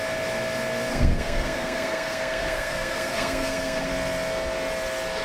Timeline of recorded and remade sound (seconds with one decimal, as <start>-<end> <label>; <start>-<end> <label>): 0.0-0.9 recorded; 0.9-3.9 remade; 3.9-5.2 recorded